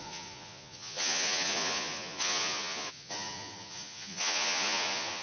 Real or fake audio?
fake